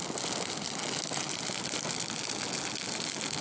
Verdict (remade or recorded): recorded